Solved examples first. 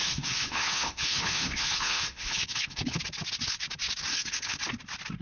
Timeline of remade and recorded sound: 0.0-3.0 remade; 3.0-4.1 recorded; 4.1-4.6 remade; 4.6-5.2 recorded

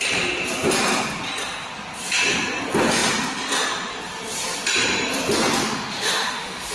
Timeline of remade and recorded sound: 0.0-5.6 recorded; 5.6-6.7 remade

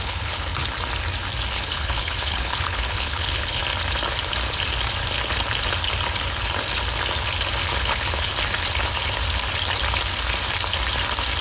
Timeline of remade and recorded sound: 0.0-0.5 remade; 0.5-1.5 recorded; 1.5-3.6 remade; 3.6-7.8 recorded; 7.8-8.3 remade; 8.3-11.4 recorded

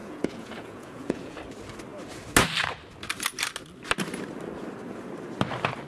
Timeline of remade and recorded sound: 0.0-1.4 remade; 1.4-5.9 recorded

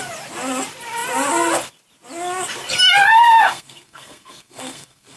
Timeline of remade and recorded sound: 0.0-3.1 recorded; 3.1-5.2 remade

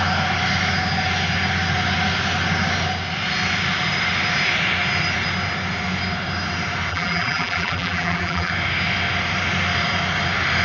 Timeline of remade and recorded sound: 0.0-6.9 recorded; 6.9-8.5 remade; 8.5-10.6 recorded

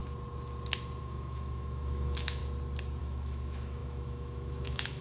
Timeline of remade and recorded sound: 0.0-1.0 recorded; 1.0-2.4 remade; 2.4-3.0 recorded; 3.0-5.0 remade

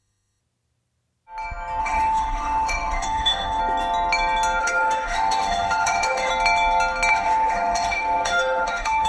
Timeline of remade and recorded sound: 0.0-0.4 remade; 0.4-1.8 recorded; 1.8-3.6 remade; 3.6-4.6 recorded; 4.6-6.3 remade; 6.3-7.1 recorded; 7.1-9.1 remade